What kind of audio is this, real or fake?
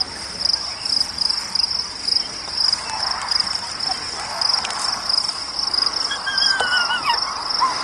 real